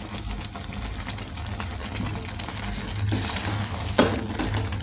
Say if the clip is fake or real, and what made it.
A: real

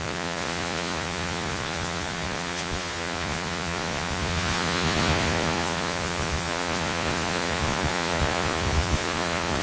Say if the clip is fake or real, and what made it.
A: fake, vocoder, Vocos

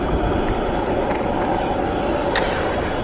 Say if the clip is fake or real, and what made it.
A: real